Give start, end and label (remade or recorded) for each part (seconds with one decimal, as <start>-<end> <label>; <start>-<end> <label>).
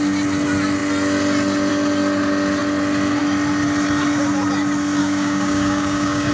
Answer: 0.0-5.0 recorded; 5.0-6.3 remade